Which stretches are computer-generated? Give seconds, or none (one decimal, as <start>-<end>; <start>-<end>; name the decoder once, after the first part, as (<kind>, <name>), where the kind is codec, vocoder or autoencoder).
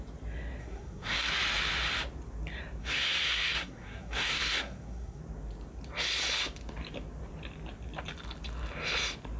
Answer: 0.6-1.3 (codec, SNAC); 2.8-5.2